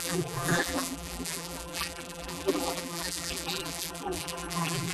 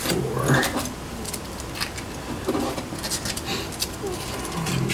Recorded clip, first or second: second